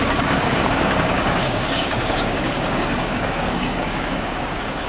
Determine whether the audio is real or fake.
fake